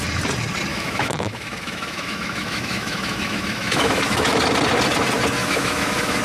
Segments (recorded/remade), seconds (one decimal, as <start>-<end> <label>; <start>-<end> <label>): 0.0-0.7 recorded; 0.7-4.4 remade; 4.4-5.4 recorded; 5.4-6.2 remade